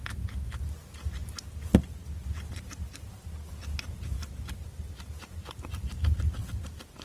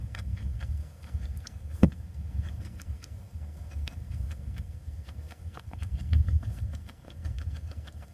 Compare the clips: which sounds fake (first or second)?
second